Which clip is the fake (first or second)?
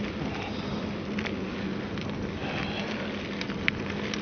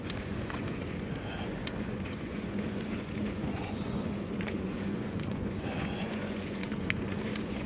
second